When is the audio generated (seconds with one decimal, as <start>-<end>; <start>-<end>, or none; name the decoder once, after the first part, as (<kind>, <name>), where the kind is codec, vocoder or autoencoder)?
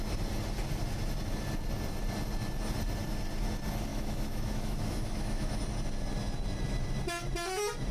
3.9-5.6 (autoencoder, DAC-VAE)